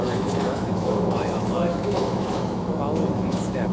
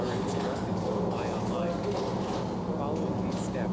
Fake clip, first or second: first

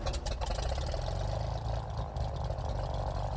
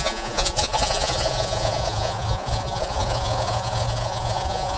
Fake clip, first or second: second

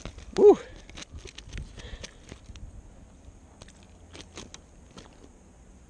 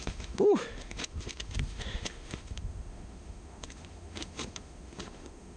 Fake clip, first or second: second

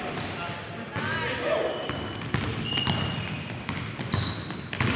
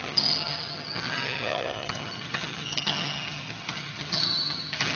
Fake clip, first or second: second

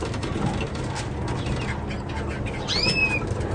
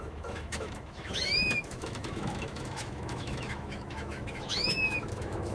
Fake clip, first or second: second